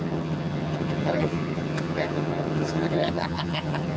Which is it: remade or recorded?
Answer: remade